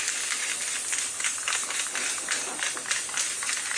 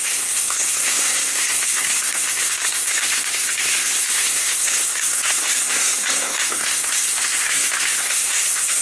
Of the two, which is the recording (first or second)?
first